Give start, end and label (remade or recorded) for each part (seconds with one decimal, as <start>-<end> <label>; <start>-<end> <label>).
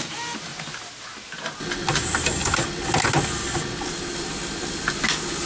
0.0-5.5 recorded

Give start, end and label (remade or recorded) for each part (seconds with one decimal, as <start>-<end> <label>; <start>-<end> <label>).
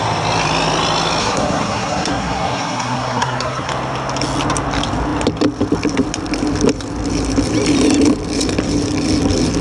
0.0-1.2 recorded; 1.2-3.7 remade; 3.7-9.6 recorded